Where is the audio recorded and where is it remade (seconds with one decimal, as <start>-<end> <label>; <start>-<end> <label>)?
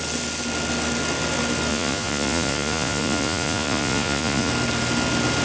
0.0-1.7 recorded; 1.7-4.5 remade; 4.5-5.4 recorded